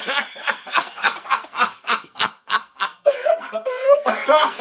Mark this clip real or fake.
fake